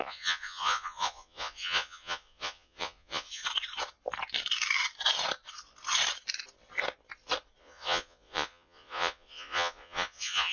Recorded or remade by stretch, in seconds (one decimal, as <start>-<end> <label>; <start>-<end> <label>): 0.0-3.4 remade; 3.4-7.6 recorded; 7.6-10.5 remade